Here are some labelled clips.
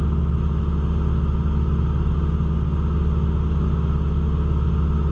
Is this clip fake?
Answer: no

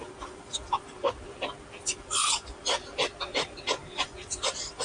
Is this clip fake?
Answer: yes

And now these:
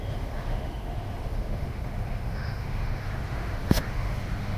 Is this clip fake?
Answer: yes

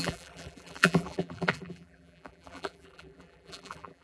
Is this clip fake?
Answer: yes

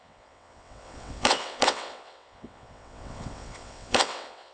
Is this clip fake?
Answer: yes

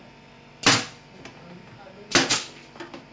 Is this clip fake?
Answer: no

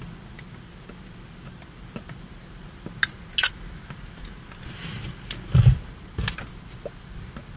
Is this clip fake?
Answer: no